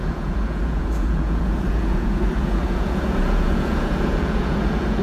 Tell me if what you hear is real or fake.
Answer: fake